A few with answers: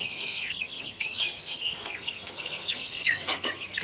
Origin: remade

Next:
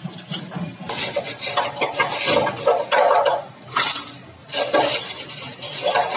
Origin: recorded